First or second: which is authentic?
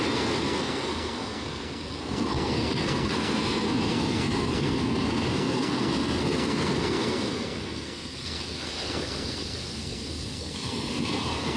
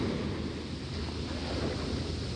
second